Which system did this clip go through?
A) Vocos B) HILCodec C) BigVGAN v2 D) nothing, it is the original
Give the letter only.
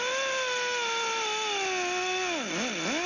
D